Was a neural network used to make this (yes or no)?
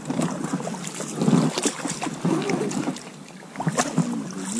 no